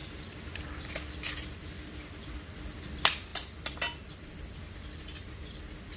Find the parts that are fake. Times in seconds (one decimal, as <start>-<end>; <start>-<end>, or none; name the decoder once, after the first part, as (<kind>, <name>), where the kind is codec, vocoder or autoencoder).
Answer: none

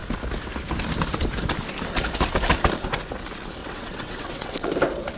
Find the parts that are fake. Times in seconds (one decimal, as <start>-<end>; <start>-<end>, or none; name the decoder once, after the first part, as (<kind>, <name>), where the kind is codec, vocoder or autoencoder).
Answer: 3.6-4.7 (vocoder, WaveNeXt)

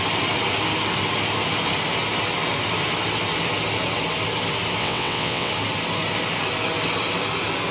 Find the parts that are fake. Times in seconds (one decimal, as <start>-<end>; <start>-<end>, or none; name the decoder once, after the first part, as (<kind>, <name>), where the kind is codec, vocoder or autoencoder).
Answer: 4.8-5.5 (vocoder, WaveNeXt)

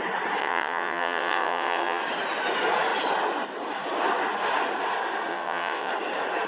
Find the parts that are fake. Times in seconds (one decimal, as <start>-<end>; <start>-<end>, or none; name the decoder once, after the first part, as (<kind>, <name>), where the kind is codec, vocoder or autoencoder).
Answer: 0.4-2.0 (vocoder, WaveNeXt); 5.3-5.9

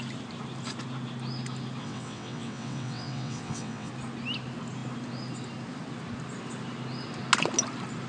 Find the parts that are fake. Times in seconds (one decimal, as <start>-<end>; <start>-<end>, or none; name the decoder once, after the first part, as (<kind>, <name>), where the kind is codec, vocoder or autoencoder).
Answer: 1.8-3.9 (vocoder, WaveNeXt)

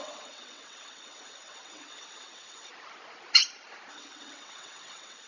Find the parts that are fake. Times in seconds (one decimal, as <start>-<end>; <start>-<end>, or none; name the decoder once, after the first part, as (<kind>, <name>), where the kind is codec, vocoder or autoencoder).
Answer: 0.0-2.7 (vocoder, WaveNeXt); 3.9-5.3